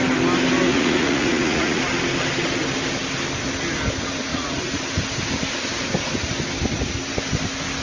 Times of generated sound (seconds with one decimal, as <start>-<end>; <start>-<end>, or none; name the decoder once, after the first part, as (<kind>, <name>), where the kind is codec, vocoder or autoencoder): 0.7-1.8 (vocoder, Vocos); 4.3-4.8